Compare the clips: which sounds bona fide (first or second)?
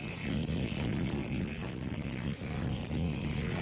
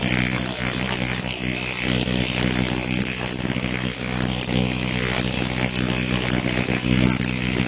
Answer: second